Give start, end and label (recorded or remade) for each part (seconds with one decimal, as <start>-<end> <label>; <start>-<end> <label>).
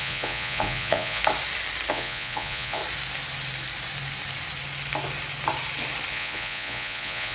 0.0-1.2 remade; 1.2-1.9 recorded; 1.9-2.8 remade; 2.8-6.1 recorded; 6.1-7.3 remade